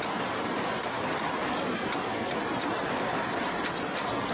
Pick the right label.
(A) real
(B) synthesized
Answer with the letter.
A